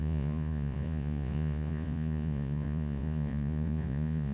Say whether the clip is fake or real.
fake